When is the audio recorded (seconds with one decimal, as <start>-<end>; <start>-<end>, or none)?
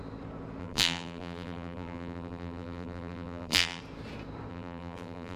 0.0-0.6; 3.8-4.5